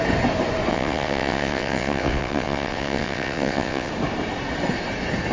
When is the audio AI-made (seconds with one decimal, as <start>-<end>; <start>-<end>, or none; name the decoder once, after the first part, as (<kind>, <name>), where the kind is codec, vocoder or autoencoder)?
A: 0.7-3.9 (vocoder, WaveNeXt)